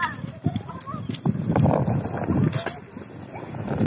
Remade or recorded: recorded